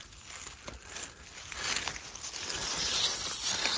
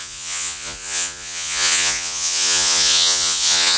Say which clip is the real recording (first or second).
first